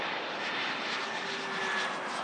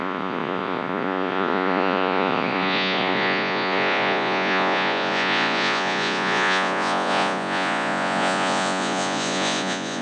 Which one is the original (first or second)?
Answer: first